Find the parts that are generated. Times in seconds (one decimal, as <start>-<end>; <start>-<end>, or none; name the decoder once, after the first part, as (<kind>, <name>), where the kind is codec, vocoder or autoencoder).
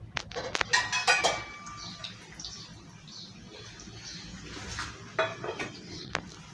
5.3-6.1 (vocoder, WaveNeXt)